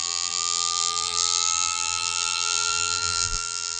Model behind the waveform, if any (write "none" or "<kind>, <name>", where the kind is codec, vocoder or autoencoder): vocoder, BigVGAN v2